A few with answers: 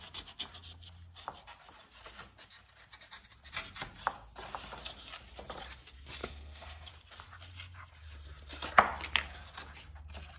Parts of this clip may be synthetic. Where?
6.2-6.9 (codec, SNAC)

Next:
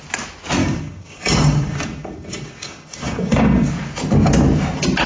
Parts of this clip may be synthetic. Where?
0.6-3.7 (codec, DAC)

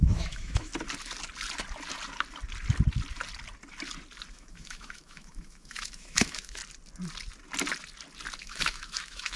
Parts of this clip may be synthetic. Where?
0.0-0.7 (autoencoder, DAC-VAE); 4.3-6.6; 8.4-9.4

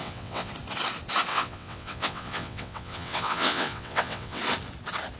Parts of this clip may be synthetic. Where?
0.0-0.5 (vocoder, WaveNeXt); 1.3-4.4